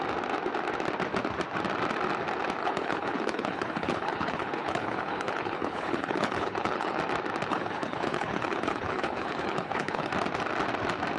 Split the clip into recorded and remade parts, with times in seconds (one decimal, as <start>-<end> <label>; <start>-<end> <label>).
0.0-2.6 recorded; 2.6-7.0 remade; 7.0-7.5 recorded; 7.5-10.1 remade; 10.1-11.2 recorded